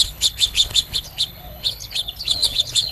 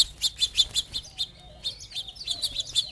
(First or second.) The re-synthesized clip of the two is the first